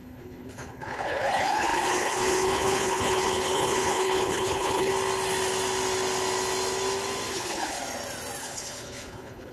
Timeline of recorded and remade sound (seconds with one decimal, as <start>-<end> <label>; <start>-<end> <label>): 0.0-4.9 remade; 4.9-7.3 recorded; 7.3-7.8 remade; 7.8-8.4 recorded; 8.4-9.5 remade